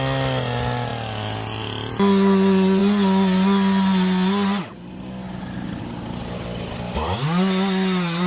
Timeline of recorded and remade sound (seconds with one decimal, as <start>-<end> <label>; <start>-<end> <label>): 0.0-8.3 recorded